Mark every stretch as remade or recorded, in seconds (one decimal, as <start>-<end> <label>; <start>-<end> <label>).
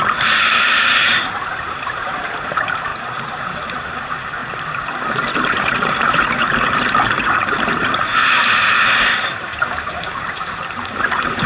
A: 0.0-2.9 remade; 2.9-3.4 recorded; 3.4-4.4 remade; 4.4-5.0 recorded; 5.0-6.5 remade; 6.5-9.2 recorded; 9.2-11.5 remade